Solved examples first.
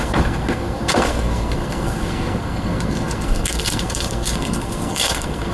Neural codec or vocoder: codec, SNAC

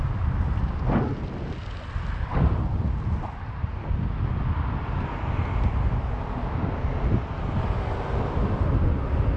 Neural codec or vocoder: none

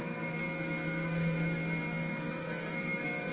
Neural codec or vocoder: codec, SNAC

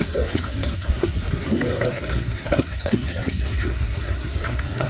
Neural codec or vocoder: codec, SNAC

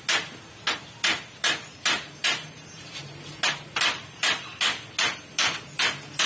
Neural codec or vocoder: none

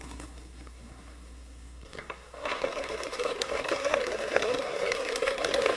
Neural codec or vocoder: codec, SNAC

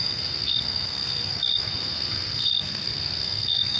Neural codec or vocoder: codec, SNAC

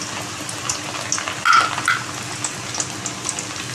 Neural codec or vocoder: none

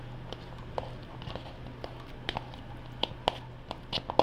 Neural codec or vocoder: none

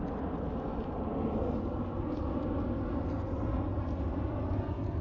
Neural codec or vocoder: none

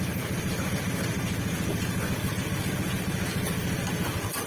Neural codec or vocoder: none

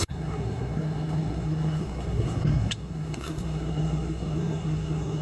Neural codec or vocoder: codec, SNAC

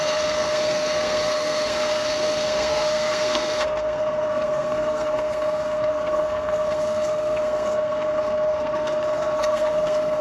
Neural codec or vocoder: codec, SNAC